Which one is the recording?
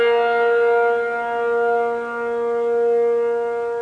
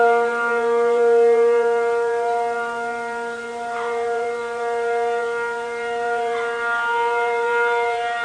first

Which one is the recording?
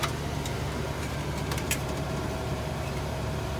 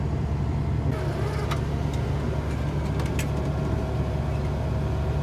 second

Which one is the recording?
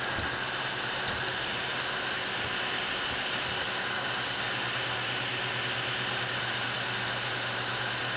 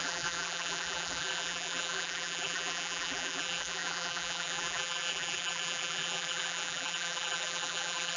first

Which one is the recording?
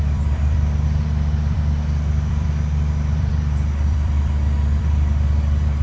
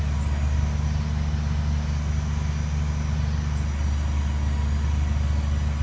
second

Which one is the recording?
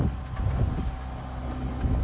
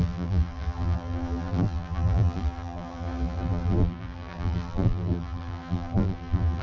first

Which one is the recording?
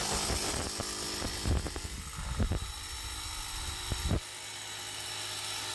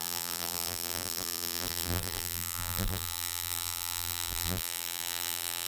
first